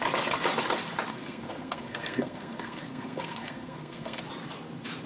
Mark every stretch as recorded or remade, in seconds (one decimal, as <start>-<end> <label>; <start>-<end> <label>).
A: 0.0-1.1 recorded; 1.1-4.2 remade; 4.2-5.1 recorded